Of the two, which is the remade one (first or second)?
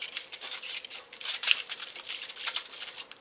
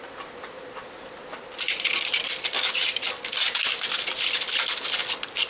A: first